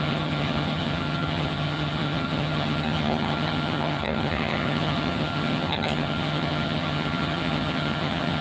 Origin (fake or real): fake